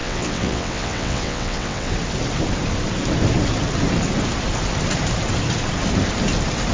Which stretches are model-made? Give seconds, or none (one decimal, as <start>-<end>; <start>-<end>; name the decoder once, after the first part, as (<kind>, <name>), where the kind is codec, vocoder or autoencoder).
0.0-1.9 (vocoder, WaveNeXt)